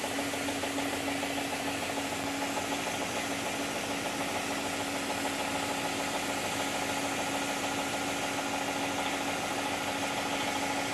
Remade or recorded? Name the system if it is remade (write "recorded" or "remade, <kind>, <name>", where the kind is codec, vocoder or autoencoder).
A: recorded